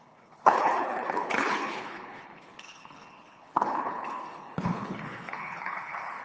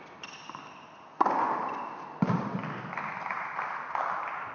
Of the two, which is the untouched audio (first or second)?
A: second